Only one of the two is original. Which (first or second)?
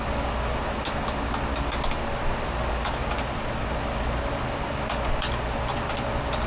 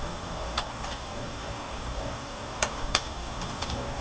first